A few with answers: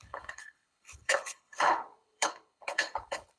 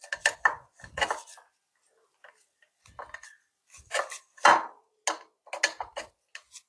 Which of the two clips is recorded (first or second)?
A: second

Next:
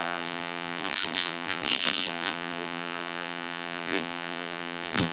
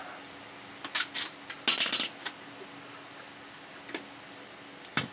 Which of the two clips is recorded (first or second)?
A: second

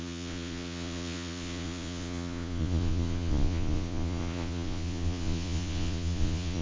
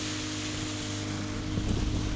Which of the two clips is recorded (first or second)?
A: second